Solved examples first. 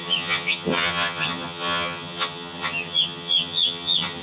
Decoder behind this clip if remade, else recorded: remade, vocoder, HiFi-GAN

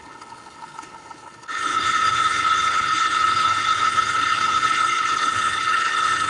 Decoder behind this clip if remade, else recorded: remade, codec, HILCodec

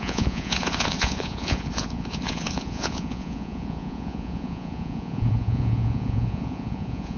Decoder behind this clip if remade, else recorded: remade, vocoder, Vocos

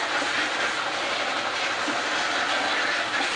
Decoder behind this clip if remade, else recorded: recorded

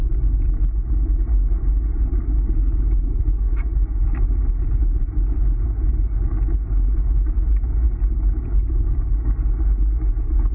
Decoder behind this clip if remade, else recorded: recorded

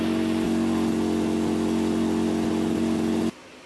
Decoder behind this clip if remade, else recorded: recorded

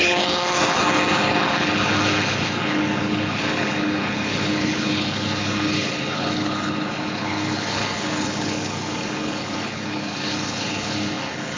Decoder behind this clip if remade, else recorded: remade, codec, HILCodec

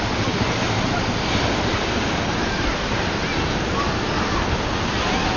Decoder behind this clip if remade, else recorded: recorded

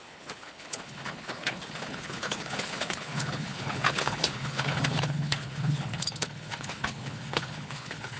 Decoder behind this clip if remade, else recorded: remade, codec, HILCodec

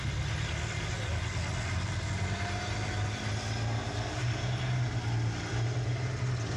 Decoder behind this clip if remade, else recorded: recorded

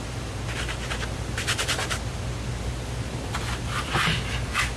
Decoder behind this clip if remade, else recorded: recorded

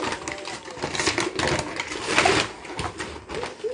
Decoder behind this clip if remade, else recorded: recorded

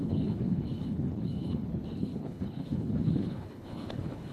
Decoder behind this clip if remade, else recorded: remade, codec, HILCodec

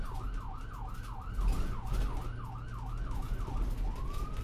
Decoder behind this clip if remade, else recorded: recorded